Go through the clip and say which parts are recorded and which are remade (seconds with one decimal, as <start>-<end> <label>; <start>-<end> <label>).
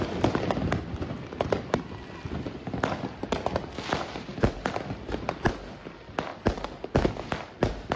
0.0-4.3 recorded; 4.3-5.0 remade; 5.0-6.3 recorded; 6.3-8.0 remade